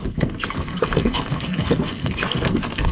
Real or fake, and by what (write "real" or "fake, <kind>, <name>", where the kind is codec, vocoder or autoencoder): fake, codec, SNAC